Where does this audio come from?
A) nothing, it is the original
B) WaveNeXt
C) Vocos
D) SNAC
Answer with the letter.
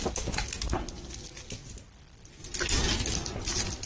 A